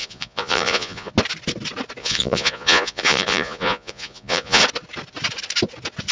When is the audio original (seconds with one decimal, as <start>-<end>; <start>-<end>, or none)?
1.1-2.0; 4.6-6.1